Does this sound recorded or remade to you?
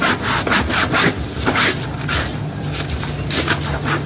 recorded